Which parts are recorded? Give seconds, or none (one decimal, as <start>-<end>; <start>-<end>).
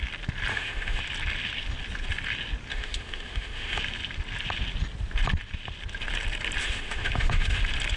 0.0-0.5; 1.0-2.7; 3.8-6.6; 7.6-8.0